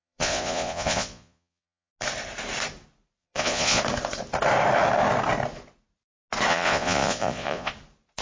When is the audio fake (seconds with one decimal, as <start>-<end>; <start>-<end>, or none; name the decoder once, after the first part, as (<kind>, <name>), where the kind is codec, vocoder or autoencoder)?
0.0-1.9 (vocoder, Vocos); 3.2-3.8; 6.5-7.7